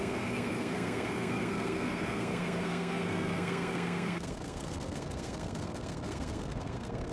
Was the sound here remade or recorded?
remade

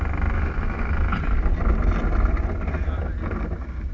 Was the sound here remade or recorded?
recorded